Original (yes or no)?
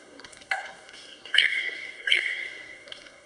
no